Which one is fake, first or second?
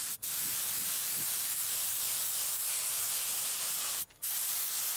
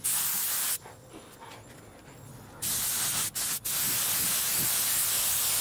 first